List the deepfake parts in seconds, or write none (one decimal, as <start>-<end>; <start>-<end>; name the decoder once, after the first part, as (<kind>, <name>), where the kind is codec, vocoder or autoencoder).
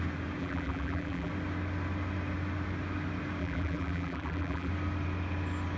0.4-1.3 (vocoder, BigVGAN v2); 3.4-4.7